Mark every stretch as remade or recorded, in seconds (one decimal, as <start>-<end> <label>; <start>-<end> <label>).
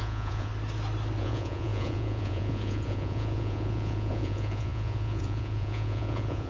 0.0-0.5 remade; 0.5-1.2 recorded; 1.2-6.5 remade